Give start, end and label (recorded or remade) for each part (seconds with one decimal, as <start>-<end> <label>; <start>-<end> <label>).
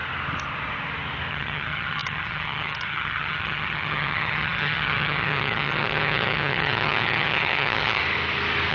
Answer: 0.0-1.3 recorded; 1.3-8.0 remade; 8.0-8.7 recorded